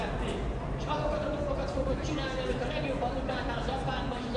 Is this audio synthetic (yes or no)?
no